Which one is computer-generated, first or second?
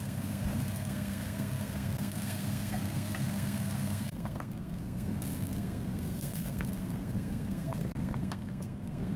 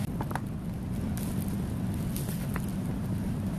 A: first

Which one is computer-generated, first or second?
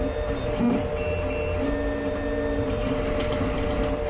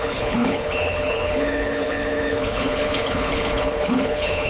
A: second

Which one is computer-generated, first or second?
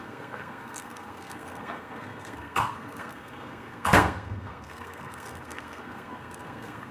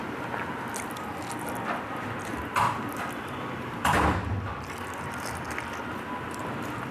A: first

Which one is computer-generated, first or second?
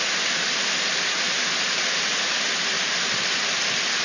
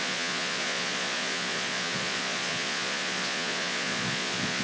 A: second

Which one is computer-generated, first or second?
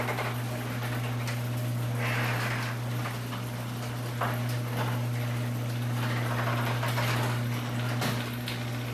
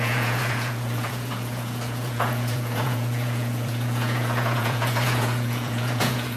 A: second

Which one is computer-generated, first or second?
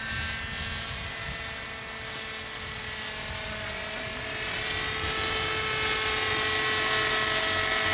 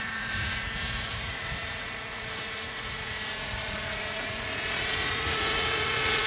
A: second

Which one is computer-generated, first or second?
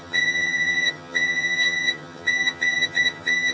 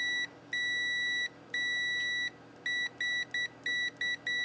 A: first